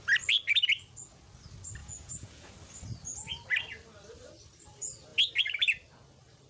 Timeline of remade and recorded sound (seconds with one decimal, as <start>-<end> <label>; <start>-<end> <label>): 0.0-1.8 recorded; 1.8-2.5 remade; 2.5-6.5 recorded